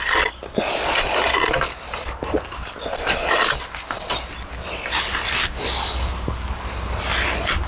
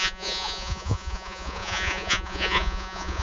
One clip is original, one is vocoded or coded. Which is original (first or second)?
first